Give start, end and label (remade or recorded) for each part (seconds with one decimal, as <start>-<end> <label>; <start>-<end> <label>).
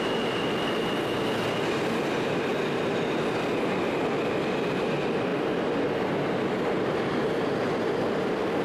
0.0-8.6 recorded